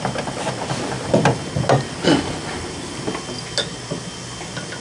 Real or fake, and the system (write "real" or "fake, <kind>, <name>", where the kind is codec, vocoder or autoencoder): real